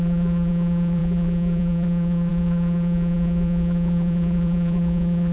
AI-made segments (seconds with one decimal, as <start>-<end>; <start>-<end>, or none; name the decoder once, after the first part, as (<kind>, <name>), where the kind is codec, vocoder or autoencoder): 0.0-5.3 (vocoder, BigVGAN v2)